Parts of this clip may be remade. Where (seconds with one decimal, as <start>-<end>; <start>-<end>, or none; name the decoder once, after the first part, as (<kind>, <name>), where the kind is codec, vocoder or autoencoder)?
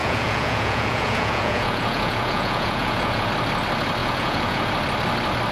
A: 0.0-3.3 (vocoder, Vocos); 4.0-4.7